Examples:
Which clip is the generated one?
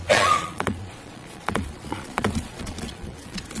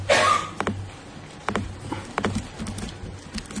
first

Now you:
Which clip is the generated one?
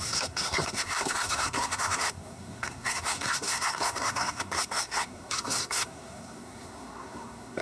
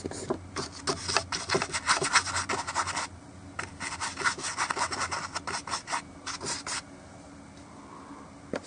first